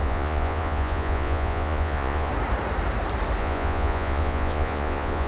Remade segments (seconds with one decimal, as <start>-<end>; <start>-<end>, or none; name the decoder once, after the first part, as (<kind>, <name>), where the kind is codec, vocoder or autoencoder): 0.0-2.3 (vocoder, Vocos); 3.4-5.3